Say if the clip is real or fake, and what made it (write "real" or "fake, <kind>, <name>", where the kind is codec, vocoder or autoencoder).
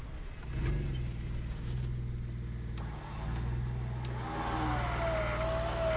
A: real